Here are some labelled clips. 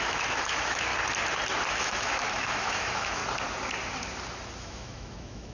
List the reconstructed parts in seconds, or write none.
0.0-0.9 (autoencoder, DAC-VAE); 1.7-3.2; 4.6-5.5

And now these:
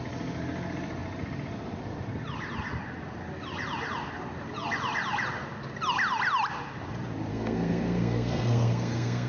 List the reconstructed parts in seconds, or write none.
7.3-9.3 (codec, SNAC)

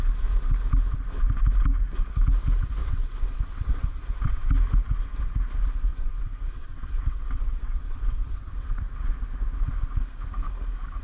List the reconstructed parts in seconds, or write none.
2.8-4.4 (vocoder, WaveNeXt); 5.9-8.8

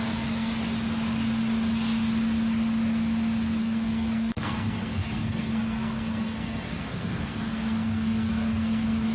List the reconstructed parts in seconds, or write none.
0.0-0.5 (codec, SNAC); 3.6-9.1

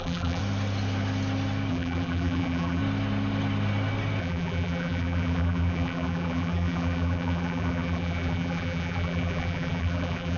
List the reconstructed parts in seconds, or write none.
0.0-0.4 (vocoder, BigVGAN v2); 1.7-2.8; 4.2-10.4

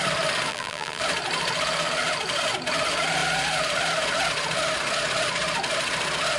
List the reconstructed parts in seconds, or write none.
0.5-1.0 (vocoder, BigVGAN v2)